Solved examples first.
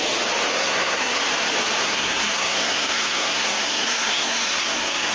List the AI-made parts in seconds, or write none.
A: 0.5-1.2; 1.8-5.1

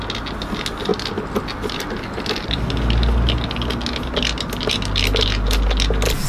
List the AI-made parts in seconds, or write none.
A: none

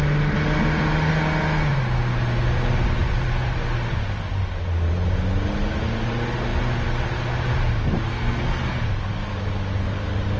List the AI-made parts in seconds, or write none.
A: 8.1-8.8